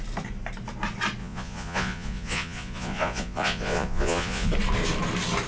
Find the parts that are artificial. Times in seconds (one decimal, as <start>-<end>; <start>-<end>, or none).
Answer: 1.2-4.5

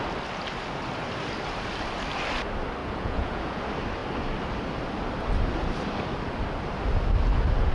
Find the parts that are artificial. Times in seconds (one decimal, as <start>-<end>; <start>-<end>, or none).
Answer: 2.8-3.6

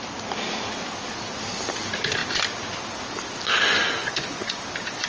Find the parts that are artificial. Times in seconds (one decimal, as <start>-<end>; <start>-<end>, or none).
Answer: 4.0-4.6

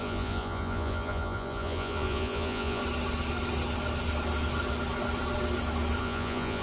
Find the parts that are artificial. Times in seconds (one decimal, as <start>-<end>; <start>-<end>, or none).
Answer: 0.0-2.8; 6.0-6.6

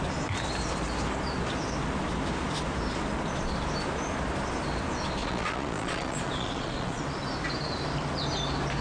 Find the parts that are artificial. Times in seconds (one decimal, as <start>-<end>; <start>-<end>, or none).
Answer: 5.2-7.0

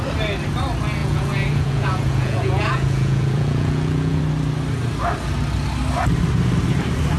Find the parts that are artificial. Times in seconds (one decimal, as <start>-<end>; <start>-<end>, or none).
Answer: 1.0-4.2

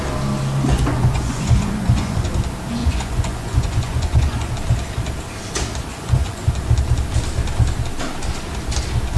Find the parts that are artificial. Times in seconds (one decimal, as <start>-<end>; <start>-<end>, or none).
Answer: 0.7-2.3; 2.8-4.5; 5.9-6.5